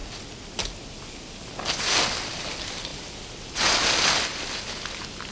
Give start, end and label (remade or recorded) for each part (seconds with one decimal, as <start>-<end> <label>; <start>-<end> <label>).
0.0-5.3 recorded